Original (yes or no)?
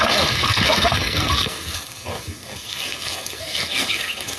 no